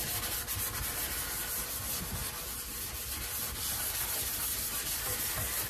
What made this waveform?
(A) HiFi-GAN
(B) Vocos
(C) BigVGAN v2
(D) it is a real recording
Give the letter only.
D